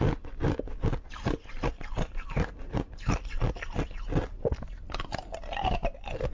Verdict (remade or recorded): recorded